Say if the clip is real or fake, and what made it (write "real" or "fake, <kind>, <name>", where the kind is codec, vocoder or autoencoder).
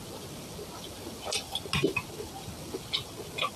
real